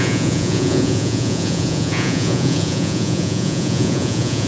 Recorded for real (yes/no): no